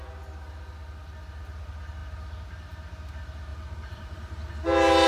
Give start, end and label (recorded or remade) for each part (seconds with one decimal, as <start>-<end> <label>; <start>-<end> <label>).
0.0-3.5 recorded; 3.5-4.5 remade; 4.5-5.1 recorded